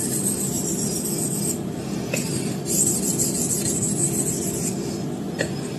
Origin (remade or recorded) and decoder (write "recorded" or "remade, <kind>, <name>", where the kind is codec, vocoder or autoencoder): remade, vocoder, BigVGAN v2